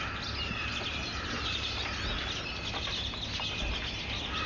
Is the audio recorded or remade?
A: recorded